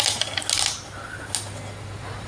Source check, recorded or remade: recorded